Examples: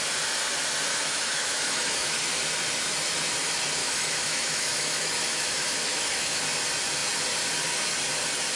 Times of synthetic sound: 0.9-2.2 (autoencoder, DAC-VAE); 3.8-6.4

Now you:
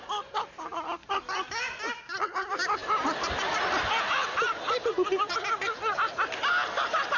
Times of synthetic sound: none

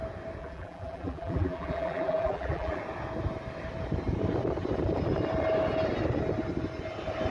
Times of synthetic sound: 0.4-2.8 (vocoder, BigVGAN v2)